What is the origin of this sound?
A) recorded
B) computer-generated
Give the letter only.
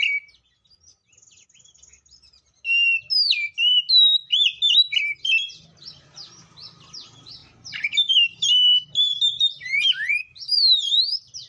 A